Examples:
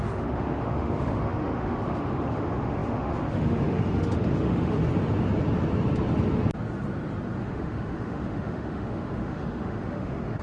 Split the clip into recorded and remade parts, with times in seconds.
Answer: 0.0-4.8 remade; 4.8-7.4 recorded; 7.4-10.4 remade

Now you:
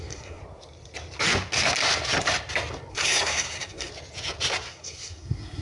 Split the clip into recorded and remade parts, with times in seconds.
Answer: 0.0-0.4 remade; 0.4-2.9 recorded; 2.9-3.9 remade; 3.9-4.7 recorded; 4.7-5.6 remade